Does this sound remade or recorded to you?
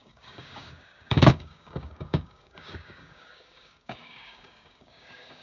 remade